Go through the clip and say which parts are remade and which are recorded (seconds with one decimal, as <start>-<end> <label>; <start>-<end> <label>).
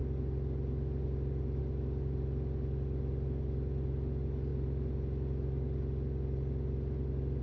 0.0-7.4 recorded